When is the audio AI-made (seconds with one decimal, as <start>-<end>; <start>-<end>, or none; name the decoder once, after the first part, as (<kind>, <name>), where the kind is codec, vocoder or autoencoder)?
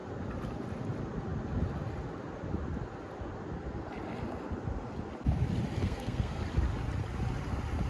5.8-6.4 (codec, SNAC)